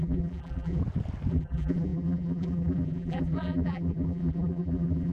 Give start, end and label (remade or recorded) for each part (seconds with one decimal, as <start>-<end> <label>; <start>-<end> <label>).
0.0-0.8 remade; 0.8-1.3 recorded; 1.3-5.1 remade